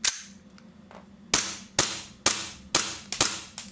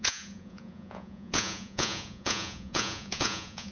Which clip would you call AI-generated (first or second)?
second